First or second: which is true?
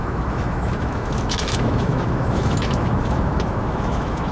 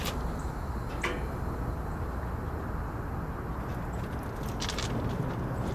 second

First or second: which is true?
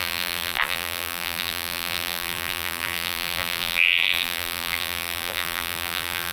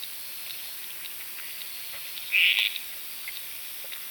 second